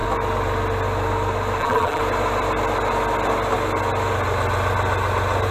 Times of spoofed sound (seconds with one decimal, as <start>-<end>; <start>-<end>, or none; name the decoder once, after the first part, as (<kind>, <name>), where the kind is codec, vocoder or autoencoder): 1.6-2.0 (vocoder, BigVGAN v2)